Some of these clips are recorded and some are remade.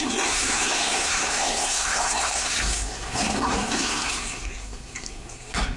remade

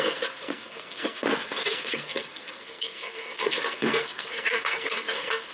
remade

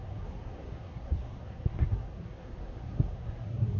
remade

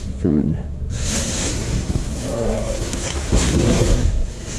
remade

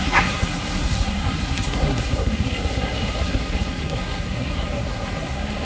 remade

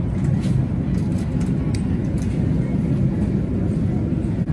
recorded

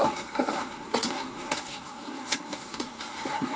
remade